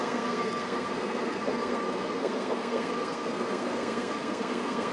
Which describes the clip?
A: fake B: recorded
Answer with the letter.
A